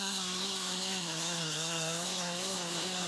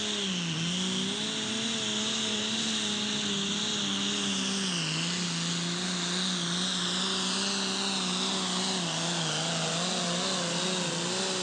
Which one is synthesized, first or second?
first